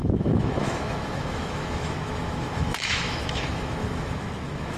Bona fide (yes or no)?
no